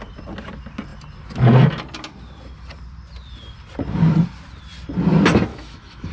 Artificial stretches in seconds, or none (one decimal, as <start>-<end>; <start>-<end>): 5.5-6.1